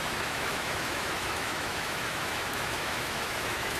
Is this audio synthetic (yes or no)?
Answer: yes